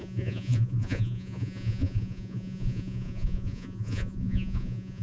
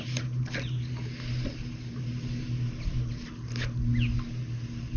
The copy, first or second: first